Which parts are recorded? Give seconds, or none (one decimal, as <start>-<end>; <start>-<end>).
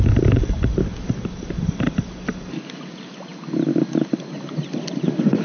0.0-5.4